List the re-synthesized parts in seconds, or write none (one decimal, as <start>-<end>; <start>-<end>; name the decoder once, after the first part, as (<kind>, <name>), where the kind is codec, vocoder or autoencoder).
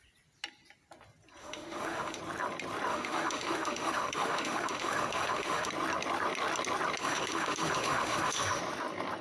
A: 1.4-2.2 (autoencoder, DAC-VAE); 2.9-5.7; 7.0-8.6